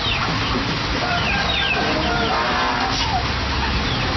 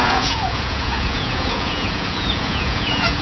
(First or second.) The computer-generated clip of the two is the second